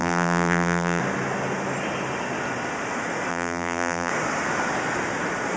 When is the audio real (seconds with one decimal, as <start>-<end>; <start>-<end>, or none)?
1.0-3.3; 4.1-5.6